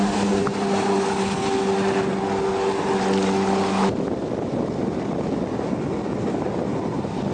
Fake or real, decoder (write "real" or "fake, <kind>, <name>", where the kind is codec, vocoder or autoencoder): real